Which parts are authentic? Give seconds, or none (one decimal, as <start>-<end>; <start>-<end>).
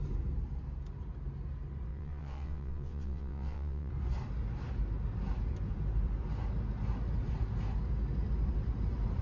0.0-1.9; 3.9-9.2